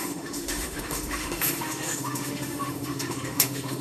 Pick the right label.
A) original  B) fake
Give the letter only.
B